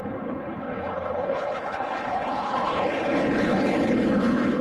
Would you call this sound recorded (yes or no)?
no